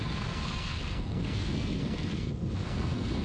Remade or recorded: remade